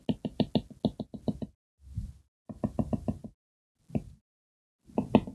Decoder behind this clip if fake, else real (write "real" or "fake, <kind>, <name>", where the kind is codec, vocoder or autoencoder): real